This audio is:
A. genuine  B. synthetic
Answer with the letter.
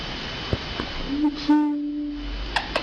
A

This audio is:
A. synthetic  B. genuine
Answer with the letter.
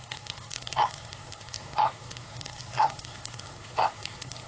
A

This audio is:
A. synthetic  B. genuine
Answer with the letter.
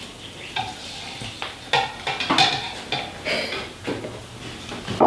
B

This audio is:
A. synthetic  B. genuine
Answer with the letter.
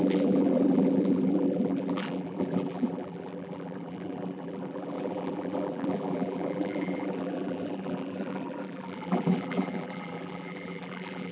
A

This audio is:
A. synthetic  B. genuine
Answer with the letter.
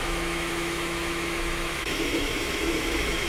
A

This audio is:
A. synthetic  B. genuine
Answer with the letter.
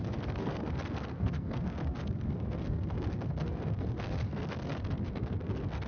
A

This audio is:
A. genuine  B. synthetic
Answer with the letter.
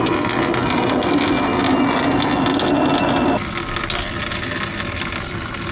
A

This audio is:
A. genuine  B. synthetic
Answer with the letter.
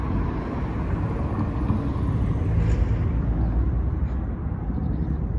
A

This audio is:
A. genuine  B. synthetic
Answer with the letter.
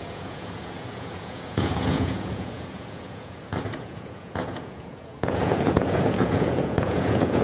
B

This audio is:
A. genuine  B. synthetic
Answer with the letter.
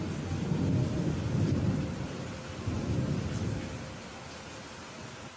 A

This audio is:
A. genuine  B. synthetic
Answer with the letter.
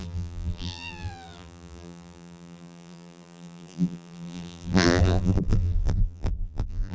B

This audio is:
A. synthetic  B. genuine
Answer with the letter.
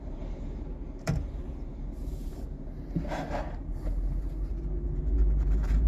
A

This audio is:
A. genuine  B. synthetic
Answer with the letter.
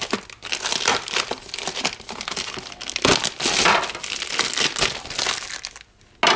A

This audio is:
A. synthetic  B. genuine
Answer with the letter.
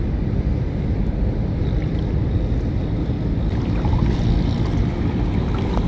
B